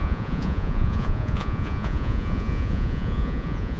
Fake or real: fake